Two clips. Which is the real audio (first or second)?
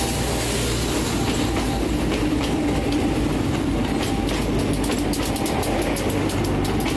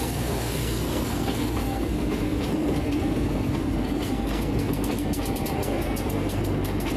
first